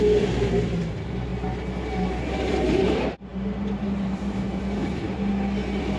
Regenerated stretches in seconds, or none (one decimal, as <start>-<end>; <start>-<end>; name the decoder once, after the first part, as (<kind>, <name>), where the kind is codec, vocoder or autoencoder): 0.0-1.3 (vocoder, BigVGAN v2); 2.3-5.3